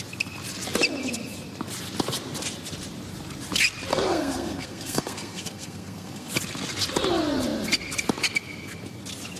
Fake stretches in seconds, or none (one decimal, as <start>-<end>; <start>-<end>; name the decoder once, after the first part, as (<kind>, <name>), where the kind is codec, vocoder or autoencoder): 3.9-6.3 (codec, SNAC)